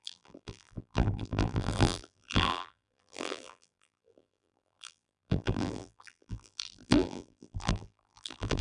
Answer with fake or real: fake